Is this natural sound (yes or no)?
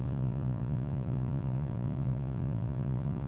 no